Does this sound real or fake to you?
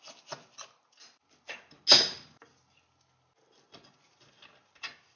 real